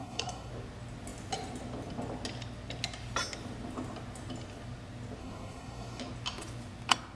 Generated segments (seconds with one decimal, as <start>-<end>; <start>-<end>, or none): 0.0-0.5; 5.2-6.0